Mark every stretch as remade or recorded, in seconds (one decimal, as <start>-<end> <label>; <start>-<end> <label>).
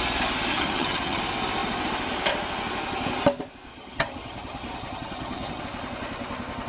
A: 0.0-0.5 recorded; 0.5-1.2 remade; 1.2-3.7 recorded; 3.7-5.6 remade; 5.6-6.7 recorded